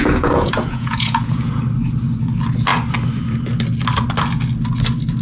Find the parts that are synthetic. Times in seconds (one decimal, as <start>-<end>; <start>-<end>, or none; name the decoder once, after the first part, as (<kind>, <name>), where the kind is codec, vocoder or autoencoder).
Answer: 0.0-1.6 (vocoder, Vocos)

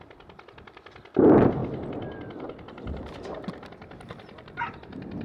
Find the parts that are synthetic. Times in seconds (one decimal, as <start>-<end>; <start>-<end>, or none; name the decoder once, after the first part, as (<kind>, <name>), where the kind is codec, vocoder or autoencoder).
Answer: none